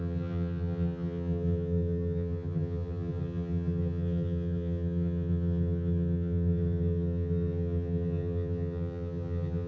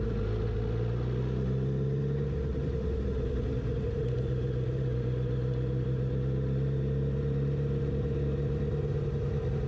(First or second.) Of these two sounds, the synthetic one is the first